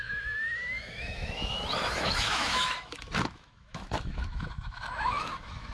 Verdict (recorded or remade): remade